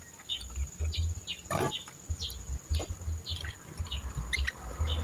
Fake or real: real